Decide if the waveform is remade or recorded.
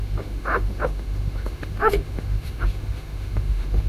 remade